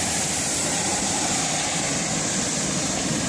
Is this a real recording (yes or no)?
no